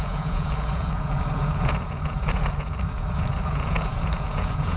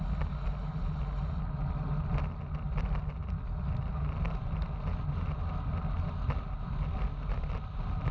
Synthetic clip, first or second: first